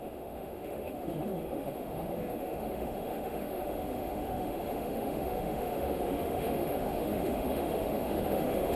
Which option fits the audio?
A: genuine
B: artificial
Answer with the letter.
B